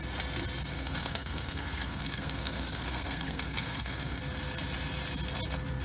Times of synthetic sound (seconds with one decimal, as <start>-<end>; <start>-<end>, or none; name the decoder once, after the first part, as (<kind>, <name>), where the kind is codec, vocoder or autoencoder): 0.7-4.2 (codec, SNAC)